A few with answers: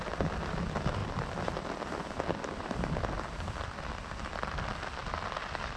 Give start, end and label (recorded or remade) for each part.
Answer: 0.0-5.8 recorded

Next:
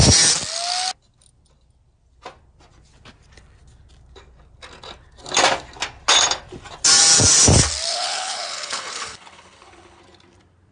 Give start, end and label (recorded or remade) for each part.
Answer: 0.0-7.9 recorded; 7.9-10.0 remade; 10.0-10.7 recorded

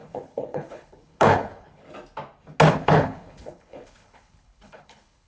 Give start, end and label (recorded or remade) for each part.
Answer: 0.0-1.8 remade; 1.8-2.7 recorded; 2.7-5.3 remade

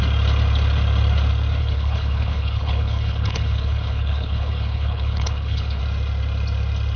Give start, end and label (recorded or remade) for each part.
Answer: 0.0-1.6 recorded; 1.6-5.8 remade; 5.8-7.0 recorded

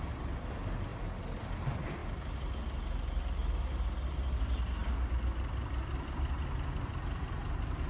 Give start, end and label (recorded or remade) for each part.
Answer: 0.0-7.9 recorded

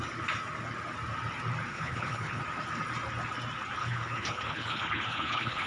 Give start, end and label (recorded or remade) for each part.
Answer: 0.0-1.7 recorded; 1.7-2.4 remade; 2.4-3.8 recorded; 3.8-5.7 remade

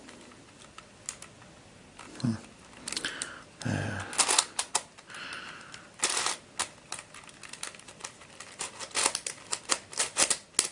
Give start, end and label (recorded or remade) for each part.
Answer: 0.0-10.7 recorded